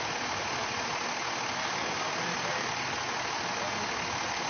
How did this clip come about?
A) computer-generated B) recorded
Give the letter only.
B